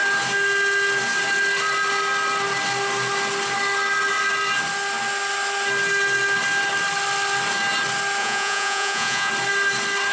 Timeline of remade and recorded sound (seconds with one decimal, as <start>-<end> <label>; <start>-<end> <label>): 0.0-8.2 recorded; 8.2-9.3 remade; 9.3-10.1 recorded